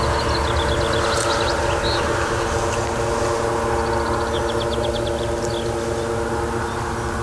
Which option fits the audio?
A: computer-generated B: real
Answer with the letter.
B